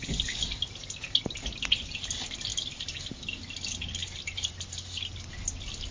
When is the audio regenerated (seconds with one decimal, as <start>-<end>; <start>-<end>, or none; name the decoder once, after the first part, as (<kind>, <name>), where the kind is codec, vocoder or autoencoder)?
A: 2.5-3.1 (vocoder, BigVGAN v2); 4.0-5.2